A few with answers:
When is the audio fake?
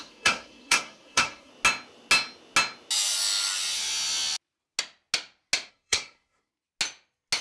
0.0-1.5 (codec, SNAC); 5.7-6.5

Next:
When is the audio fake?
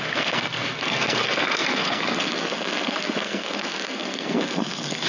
0.0-5.1 (codec, SNAC)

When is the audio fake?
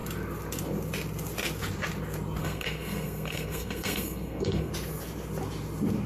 2.4-4.7 (codec, SNAC)